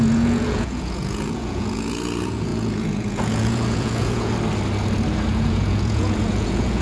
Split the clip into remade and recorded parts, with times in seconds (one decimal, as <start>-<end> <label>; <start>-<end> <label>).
0.0-4.3 remade; 4.3-5.1 recorded; 5.1-6.8 remade